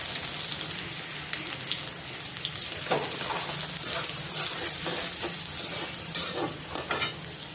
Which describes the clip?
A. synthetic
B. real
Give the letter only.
B